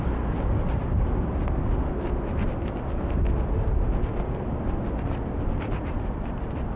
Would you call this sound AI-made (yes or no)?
no